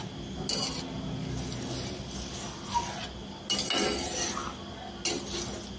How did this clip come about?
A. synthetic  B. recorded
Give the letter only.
B